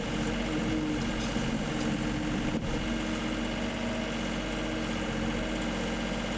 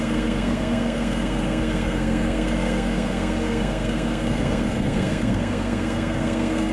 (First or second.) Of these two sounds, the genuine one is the first